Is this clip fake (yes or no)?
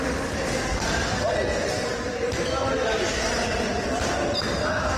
no